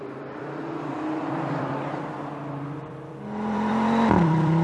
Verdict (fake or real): fake